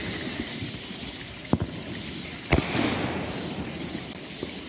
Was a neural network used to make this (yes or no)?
no